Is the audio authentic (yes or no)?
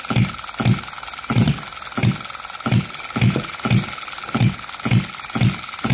yes